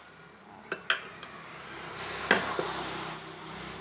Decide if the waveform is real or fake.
real